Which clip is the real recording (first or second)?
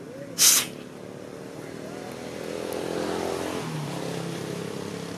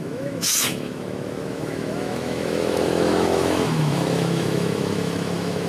first